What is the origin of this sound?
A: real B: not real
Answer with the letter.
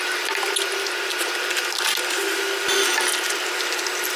A